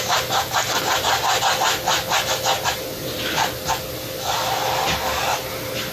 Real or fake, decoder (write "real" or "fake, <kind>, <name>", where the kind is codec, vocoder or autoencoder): real